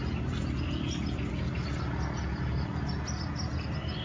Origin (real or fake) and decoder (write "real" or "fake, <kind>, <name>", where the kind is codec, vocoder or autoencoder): real